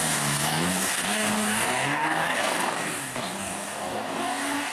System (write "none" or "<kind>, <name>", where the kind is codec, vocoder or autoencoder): codec, DAC